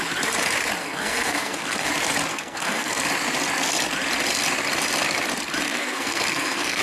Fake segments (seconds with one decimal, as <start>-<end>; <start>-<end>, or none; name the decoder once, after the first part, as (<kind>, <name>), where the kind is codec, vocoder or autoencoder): 0.8-1.9 (codec, SNAC); 2.3-3.1; 5.7-6.8